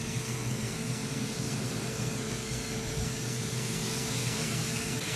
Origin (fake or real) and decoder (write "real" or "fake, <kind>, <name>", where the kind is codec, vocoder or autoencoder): fake, codec, SNAC